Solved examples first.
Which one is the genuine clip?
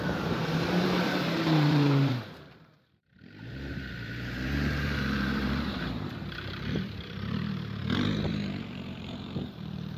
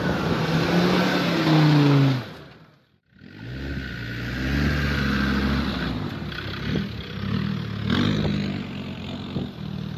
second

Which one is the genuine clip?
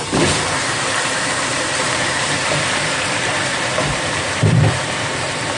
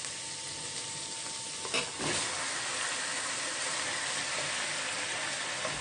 second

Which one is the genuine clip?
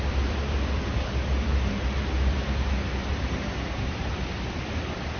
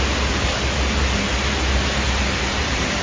second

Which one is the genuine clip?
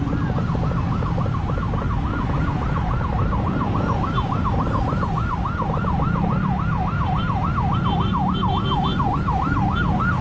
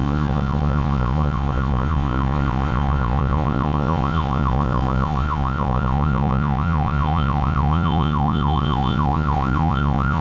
first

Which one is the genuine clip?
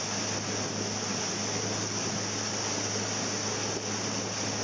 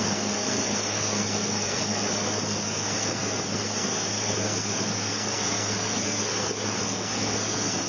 first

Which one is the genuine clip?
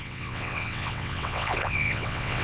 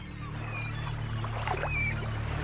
second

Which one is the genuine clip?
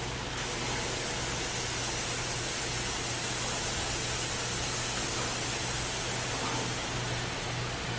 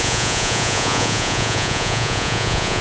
first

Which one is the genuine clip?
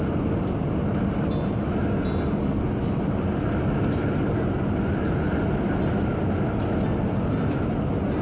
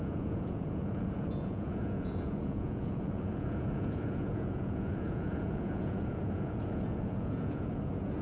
first